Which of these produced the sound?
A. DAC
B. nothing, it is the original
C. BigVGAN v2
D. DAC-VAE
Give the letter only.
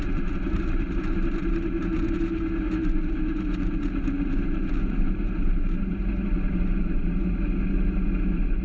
C